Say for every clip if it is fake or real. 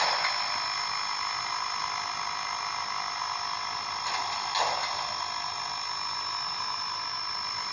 real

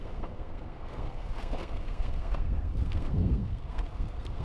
fake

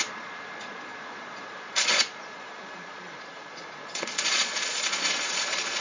fake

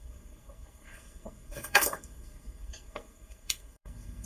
fake